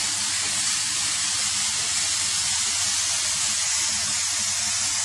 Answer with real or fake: real